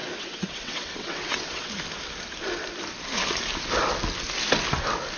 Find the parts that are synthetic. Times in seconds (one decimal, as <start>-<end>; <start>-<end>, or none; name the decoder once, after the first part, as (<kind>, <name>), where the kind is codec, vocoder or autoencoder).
0.0-1.7 (vocoder, WaveNeXt)